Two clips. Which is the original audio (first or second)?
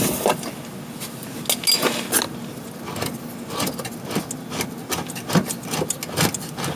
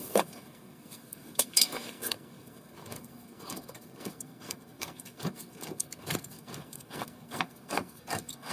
first